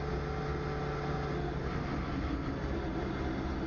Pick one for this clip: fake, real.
real